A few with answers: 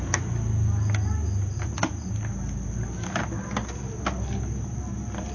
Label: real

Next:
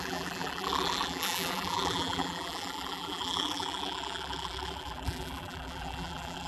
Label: fake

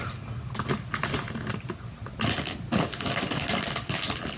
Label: real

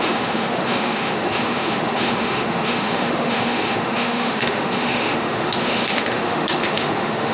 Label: fake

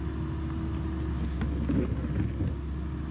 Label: real